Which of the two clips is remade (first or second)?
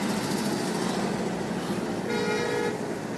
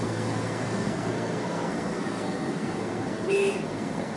second